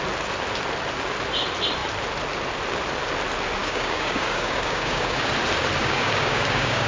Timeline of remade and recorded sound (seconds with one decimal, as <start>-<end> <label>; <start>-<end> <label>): 0.0-3.6 recorded; 3.6-5.3 remade; 5.3-5.8 recorded; 5.8-6.9 remade